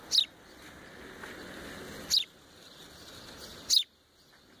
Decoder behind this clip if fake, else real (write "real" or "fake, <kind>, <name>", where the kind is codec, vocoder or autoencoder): real